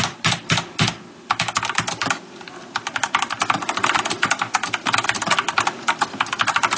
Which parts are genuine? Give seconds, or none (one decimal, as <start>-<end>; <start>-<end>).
0.0-6.8